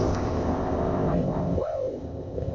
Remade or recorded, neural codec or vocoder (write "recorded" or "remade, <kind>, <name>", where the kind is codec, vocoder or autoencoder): remade, codec, ZipCodec